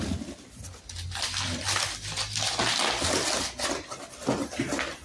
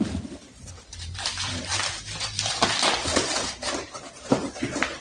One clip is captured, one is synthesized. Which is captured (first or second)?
first